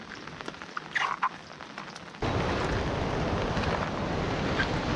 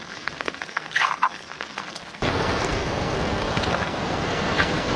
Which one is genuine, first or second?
first